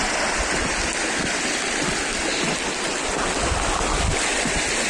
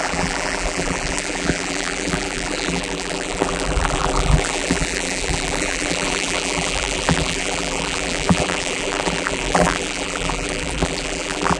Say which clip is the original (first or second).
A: first